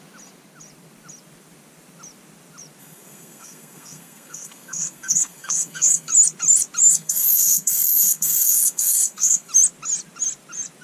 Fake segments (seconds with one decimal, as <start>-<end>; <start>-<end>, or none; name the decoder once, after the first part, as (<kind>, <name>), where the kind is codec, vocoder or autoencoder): 2.8-6.1 (codec, SNAC); 6.9-9.5